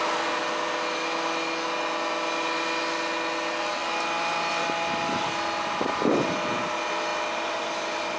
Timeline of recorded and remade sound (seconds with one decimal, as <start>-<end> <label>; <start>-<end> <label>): 0.0-8.2 recorded